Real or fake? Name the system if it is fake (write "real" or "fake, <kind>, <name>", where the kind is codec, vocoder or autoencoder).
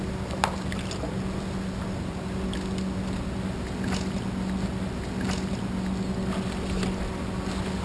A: real